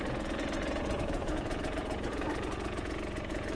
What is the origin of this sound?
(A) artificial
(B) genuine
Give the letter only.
A